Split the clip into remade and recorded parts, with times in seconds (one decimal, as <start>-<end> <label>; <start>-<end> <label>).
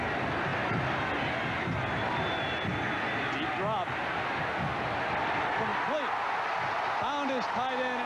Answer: 0.0-8.1 recorded